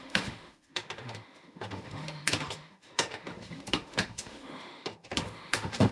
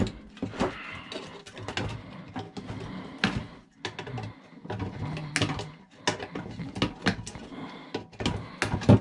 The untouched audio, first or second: second